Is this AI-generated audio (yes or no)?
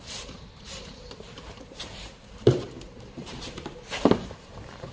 yes